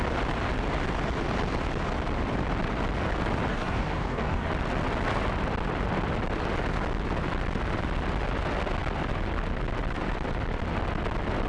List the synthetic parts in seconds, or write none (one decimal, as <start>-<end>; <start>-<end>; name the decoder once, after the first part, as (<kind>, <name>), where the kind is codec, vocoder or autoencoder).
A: 3.5-4.5 (codec, DAC)